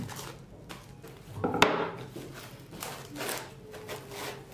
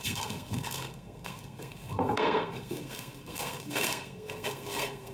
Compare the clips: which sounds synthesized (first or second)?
second